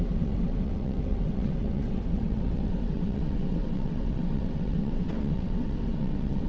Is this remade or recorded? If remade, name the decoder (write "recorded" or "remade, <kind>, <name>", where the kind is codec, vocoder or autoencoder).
remade, vocoder, WaveNeXt